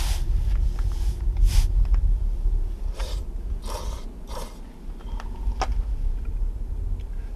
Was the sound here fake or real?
real